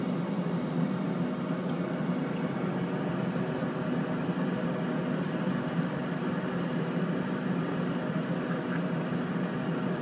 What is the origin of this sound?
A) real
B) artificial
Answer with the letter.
A